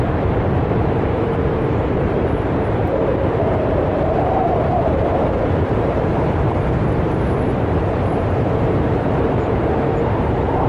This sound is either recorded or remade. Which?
remade